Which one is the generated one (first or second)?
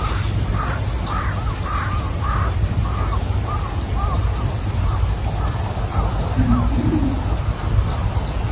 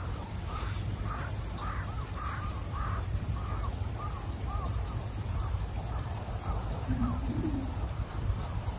second